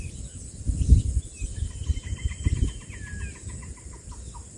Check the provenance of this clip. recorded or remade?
recorded